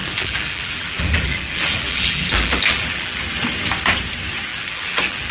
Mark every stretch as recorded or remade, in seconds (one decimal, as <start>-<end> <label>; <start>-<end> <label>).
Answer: 0.0-3.2 remade; 3.2-4.5 recorded; 4.5-5.3 remade